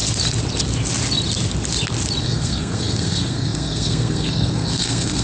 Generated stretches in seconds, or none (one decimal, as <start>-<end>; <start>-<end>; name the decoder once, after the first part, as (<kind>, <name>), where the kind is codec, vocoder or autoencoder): 2.2-5.2 (codec, SNAC)